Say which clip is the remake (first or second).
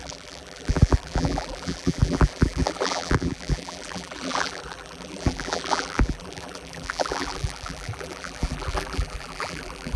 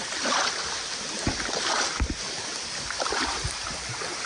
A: first